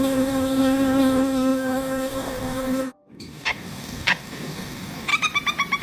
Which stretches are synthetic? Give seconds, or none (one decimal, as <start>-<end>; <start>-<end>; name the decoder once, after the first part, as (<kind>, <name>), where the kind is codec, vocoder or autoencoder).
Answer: 0.0-5.1 (codec, DAC)